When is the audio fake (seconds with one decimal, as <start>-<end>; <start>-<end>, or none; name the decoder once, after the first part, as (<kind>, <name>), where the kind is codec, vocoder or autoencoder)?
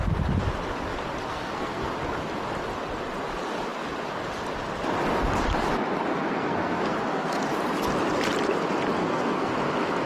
1.3-1.9 (codec, SNAC); 6.1-7.4; 9.0-9.5